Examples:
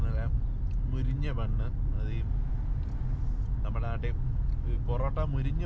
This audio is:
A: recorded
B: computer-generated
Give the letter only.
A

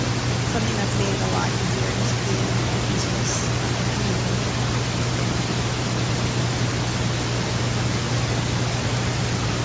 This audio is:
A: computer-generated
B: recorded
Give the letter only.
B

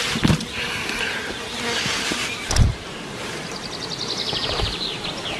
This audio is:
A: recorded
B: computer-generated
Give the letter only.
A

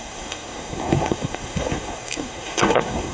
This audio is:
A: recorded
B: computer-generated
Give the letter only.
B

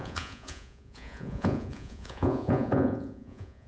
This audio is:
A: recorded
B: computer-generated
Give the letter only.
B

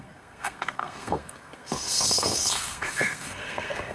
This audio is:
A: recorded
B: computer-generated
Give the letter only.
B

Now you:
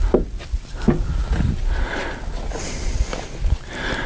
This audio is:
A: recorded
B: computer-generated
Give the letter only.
A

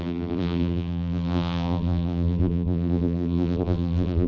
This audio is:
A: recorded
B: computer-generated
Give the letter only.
B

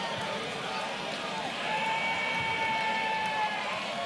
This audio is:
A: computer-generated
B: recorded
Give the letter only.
A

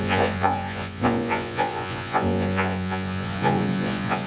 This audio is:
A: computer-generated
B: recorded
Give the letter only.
A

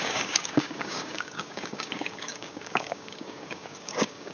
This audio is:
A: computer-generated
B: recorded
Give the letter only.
A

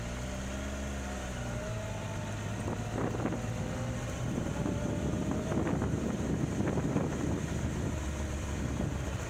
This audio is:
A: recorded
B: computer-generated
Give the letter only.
A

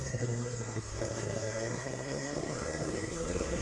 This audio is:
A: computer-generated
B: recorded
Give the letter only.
A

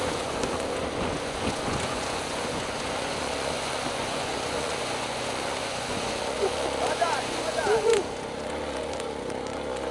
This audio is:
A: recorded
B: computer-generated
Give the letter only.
B